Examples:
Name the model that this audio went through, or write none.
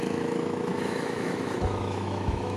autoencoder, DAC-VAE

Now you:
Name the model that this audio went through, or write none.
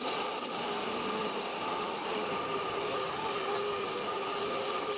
none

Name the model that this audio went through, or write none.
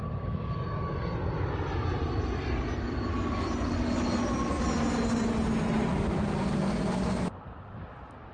none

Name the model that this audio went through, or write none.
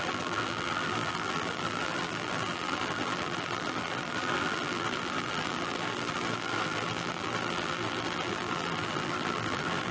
vocoder, BigVGAN v2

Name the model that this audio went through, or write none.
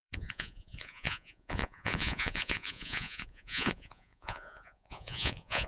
vocoder, Vocos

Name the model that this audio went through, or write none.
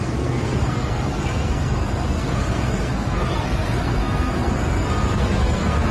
codec, SNAC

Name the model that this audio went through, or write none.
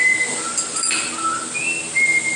none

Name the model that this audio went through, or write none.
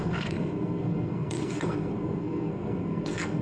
codec, SNAC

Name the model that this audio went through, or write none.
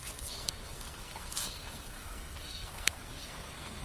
codec, SNAC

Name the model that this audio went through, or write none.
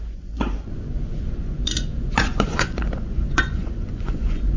vocoder, Vocos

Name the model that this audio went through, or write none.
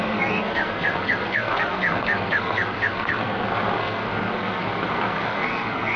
codec, SNAC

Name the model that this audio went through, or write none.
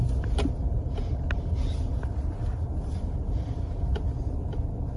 none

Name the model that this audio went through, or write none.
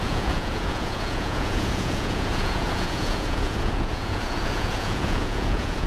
vocoder, Vocos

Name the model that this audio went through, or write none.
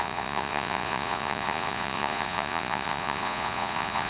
vocoder, Vocos